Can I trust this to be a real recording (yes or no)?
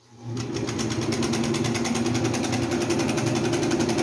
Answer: yes